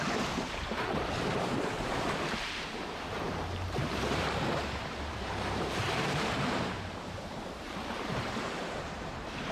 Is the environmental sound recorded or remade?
remade